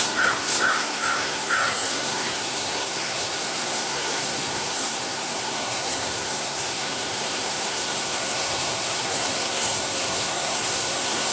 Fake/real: fake